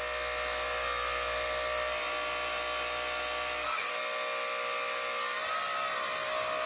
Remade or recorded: recorded